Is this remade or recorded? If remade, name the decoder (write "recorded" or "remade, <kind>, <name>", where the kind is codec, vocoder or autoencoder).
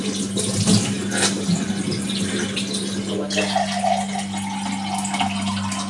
recorded